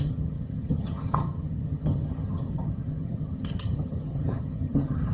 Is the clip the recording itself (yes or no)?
no